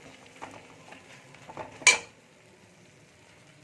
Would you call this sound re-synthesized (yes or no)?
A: no